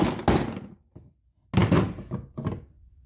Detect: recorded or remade recorded